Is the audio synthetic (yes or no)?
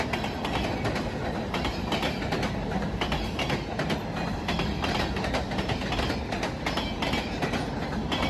no